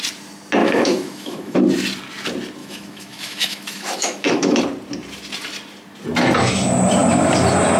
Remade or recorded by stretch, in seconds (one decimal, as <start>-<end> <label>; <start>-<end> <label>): 0.0-0.6 recorded; 0.6-1.6 remade; 1.6-2.6 recorded; 2.6-4.6 remade; 4.6-7.8 recorded